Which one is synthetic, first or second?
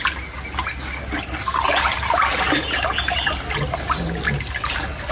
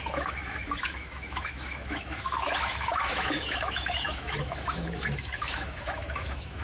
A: second